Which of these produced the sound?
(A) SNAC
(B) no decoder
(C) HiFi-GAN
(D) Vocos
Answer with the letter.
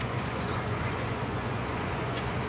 D